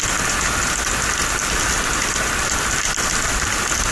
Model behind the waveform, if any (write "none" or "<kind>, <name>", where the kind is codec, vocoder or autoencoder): none